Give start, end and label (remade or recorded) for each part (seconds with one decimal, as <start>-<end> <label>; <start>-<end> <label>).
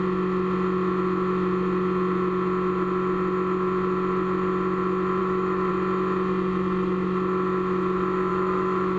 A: 0.0-5.2 recorded; 5.2-5.7 remade; 5.7-8.3 recorded; 8.3-9.0 remade